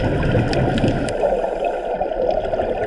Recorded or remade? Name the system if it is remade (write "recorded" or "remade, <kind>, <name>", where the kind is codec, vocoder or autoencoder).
recorded